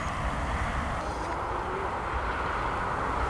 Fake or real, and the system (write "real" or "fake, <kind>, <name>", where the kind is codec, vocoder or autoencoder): real